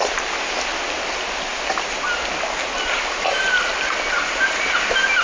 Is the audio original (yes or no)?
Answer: yes